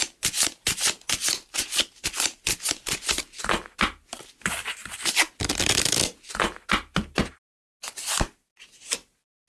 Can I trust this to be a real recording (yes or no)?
yes